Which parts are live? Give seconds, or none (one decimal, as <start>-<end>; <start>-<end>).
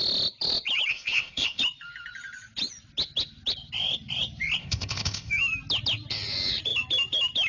0.0-0.9; 1.6-4.6; 5.3-7.5